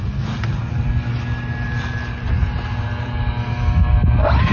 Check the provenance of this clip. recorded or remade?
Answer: recorded